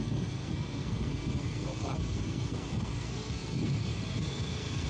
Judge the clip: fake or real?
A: fake